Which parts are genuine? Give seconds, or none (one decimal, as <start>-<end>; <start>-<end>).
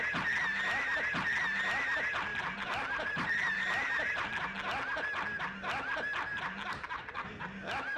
0.0-2.3; 4.3-6.3; 7.4-8.0